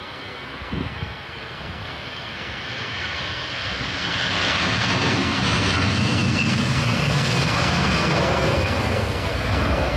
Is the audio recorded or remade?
remade